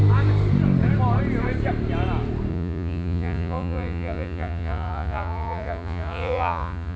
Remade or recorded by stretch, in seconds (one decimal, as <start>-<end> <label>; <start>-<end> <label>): 0.0-2.5 recorded; 2.5-7.0 remade